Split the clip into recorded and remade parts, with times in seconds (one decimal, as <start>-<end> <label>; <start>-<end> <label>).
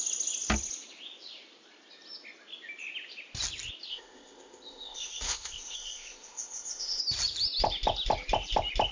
0.0-3.9 recorded; 3.9-7.0 remade; 7.0-8.9 recorded